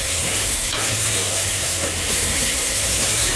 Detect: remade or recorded remade